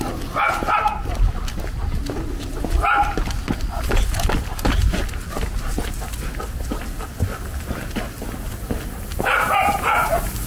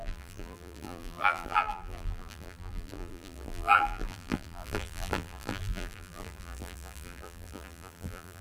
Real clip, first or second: first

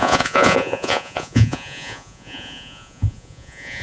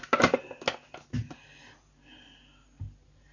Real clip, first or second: second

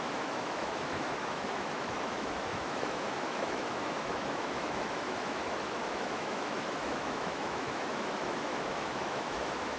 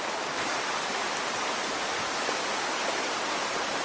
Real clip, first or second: second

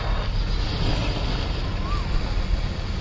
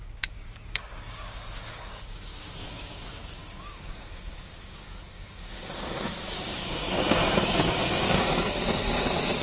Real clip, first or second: first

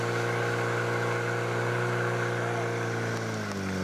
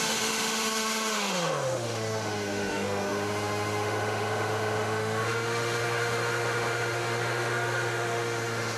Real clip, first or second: first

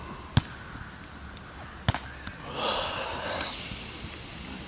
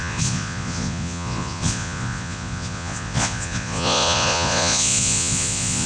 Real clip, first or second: first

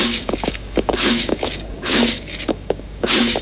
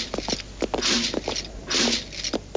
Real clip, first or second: second